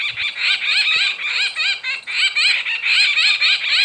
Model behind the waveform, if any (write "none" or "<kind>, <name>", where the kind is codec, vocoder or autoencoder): none